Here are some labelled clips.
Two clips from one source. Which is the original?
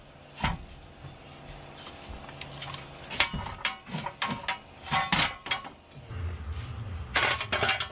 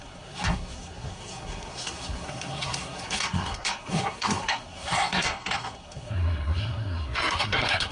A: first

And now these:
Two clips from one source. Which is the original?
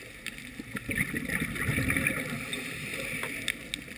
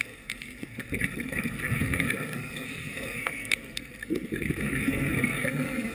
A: first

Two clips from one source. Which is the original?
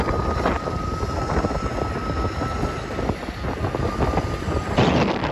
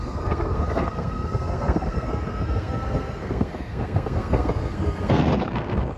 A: first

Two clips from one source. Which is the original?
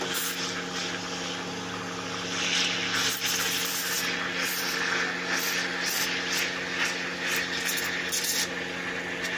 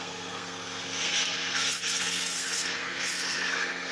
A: first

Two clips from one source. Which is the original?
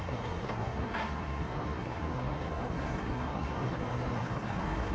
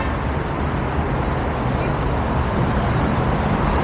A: second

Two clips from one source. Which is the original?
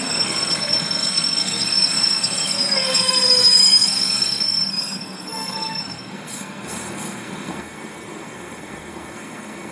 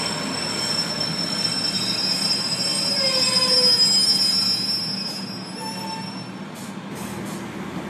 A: second